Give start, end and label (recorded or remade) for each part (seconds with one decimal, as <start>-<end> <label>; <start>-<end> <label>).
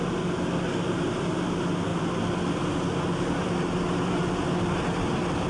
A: 0.0-5.5 recorded